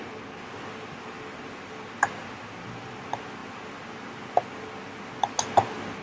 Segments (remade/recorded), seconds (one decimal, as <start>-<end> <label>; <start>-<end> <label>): 0.0-6.0 recorded